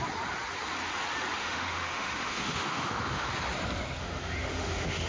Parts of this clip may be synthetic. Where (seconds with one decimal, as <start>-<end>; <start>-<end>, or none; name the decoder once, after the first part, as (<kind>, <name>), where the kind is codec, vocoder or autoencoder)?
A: 1.4-3.3 (autoencoder, DAC-VAE); 4.0-5.1